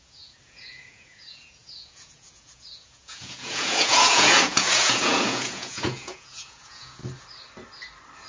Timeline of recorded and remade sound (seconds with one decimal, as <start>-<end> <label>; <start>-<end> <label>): 0.0-7.0 remade; 7.0-8.3 recorded